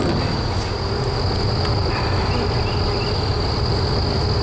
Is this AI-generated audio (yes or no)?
no